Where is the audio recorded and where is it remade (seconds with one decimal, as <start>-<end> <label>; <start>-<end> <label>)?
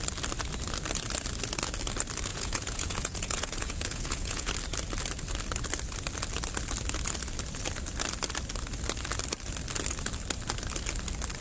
0.0-2.3 recorded; 2.3-4.5 remade; 4.5-11.4 recorded